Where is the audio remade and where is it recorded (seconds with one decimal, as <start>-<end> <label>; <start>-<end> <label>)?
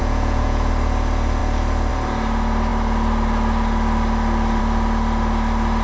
0.0-0.7 remade; 0.7-5.8 recorded